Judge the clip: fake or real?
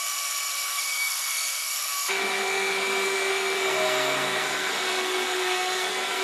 fake